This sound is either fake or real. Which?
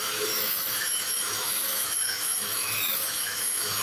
fake